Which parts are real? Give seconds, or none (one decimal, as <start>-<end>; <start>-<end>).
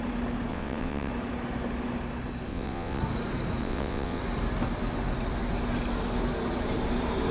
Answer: 0.0-0.5; 1.1-2.5; 3.0-3.6; 4.2-7.3